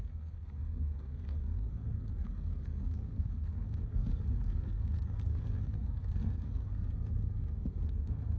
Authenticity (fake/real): fake